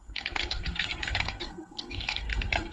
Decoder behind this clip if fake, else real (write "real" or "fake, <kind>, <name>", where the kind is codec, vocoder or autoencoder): fake, codec, SNAC